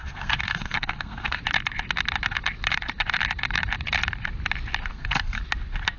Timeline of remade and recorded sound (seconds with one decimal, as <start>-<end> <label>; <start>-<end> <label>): 0.0-1.4 remade; 1.4-4.9 recorded; 4.9-5.4 remade; 5.4-6.0 recorded